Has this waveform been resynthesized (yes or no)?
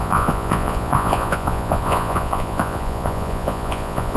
yes